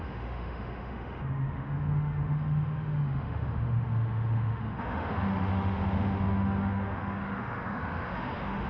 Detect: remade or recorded remade